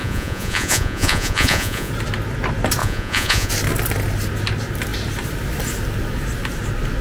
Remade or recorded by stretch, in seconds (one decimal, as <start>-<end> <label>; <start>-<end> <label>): 0.0-1.9 remade; 1.9-2.8 recorded; 2.8-3.5 remade; 3.5-7.0 recorded